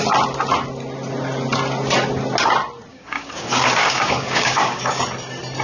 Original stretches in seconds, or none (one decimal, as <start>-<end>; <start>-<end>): 0.0-2.9; 5.0-5.6